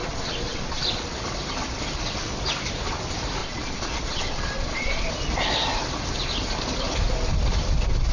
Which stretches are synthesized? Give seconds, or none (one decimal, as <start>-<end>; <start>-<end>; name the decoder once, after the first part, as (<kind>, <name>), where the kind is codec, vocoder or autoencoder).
0.0-0.8 (vocoder, Vocos); 3.4-5.1